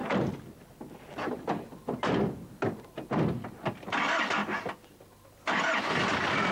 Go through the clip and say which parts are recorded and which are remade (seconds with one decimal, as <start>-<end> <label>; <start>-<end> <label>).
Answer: 0.0-4.4 remade; 4.4-5.8 recorded; 5.8-6.5 remade